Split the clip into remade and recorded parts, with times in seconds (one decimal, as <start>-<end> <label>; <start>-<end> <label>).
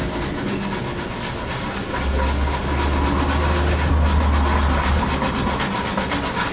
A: 0.0-6.5 recorded